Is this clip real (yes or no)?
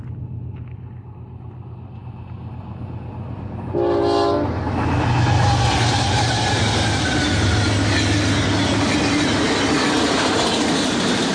yes